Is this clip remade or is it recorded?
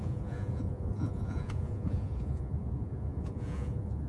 remade